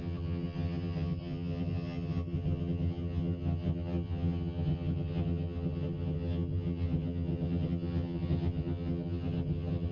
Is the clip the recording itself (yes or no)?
no